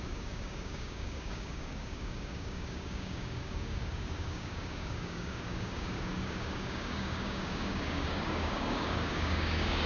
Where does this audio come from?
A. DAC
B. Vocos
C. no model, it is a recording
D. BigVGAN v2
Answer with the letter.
A